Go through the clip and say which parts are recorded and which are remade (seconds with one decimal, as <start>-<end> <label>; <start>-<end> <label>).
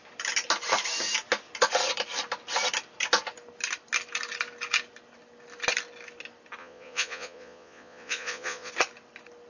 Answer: 0.0-6.6 recorded; 6.6-8.7 remade; 8.7-9.5 recorded